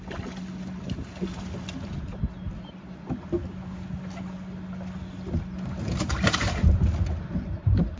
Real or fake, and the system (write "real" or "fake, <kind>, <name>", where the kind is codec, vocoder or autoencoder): real